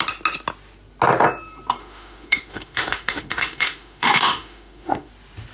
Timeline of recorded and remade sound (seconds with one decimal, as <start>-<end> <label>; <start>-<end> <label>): 0.0-1.8 recorded; 1.8-5.1 remade; 5.1-5.5 recorded